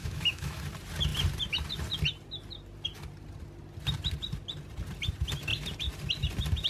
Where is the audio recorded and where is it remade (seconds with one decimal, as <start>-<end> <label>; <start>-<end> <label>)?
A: 0.0-0.6 remade; 0.6-6.7 recorded